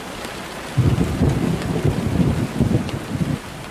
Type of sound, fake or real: fake